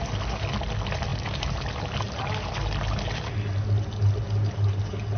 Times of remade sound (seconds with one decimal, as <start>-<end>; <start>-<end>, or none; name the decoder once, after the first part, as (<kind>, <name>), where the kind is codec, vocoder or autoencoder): none